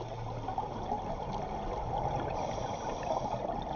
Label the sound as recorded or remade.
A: recorded